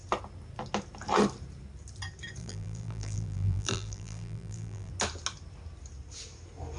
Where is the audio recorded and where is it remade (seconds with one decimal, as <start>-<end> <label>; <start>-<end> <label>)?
0.0-2.4 recorded; 2.4-4.9 remade; 4.9-6.8 recorded